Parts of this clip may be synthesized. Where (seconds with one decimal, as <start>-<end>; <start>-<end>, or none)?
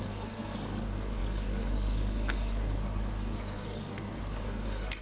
0.0-5.0